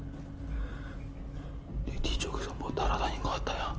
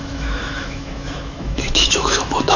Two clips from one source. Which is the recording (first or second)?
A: first